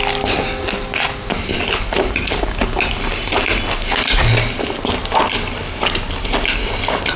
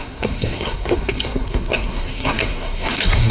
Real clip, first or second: first